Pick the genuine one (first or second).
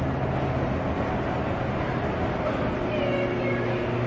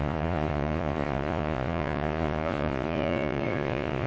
first